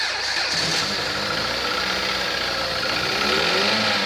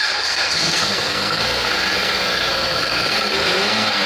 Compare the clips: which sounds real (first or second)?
first